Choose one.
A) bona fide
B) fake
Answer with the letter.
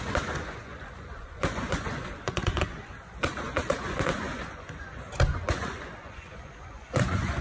B